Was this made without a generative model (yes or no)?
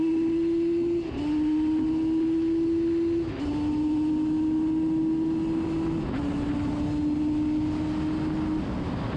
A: yes